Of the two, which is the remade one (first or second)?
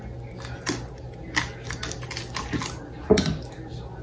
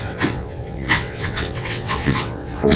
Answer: second